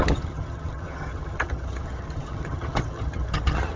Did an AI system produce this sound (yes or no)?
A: yes